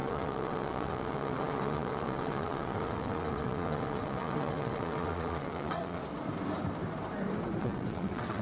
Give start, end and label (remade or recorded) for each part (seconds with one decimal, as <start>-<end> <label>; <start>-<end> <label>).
0.0-6.0 remade; 6.0-7.6 recorded; 7.6-8.4 remade